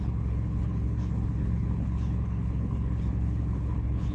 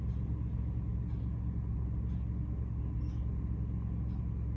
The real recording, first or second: second